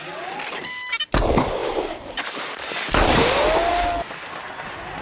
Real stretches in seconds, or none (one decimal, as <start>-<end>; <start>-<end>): 0.0-1.6; 2.7-5.0